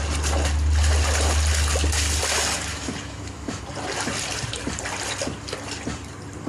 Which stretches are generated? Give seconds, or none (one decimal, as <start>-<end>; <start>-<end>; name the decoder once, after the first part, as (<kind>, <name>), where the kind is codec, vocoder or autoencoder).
2.7-3.6 (autoencoder, DAC-VAE)